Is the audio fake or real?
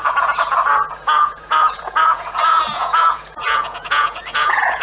fake